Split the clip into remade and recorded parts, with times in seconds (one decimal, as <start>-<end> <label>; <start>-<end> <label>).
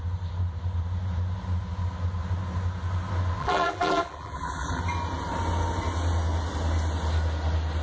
0.0-3.4 recorded; 3.4-4.8 remade; 4.8-7.8 recorded